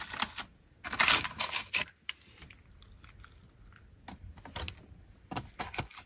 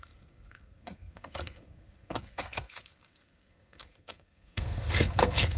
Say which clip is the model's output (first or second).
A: second